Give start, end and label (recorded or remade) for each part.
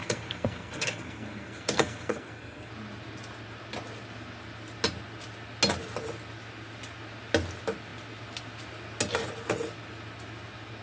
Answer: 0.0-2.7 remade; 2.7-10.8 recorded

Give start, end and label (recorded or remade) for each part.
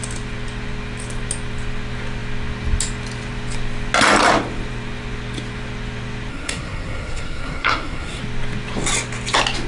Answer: 0.0-6.3 recorded; 6.3-8.2 remade; 8.2-9.7 recorded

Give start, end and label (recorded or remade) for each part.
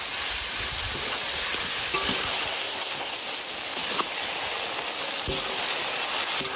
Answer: 0.0-2.5 recorded; 2.5-3.1 remade; 3.1-6.6 recorded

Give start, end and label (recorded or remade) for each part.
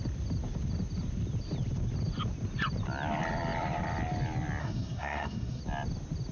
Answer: 0.0-4.6 recorded; 4.6-5.6 remade; 5.6-6.3 recorded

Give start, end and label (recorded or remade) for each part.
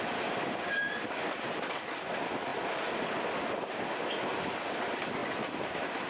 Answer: 0.0-6.1 recorded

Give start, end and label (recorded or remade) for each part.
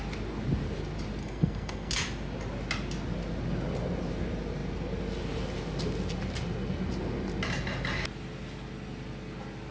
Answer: 0.0-1.2 recorded; 1.2-1.9 remade; 1.9-9.7 recorded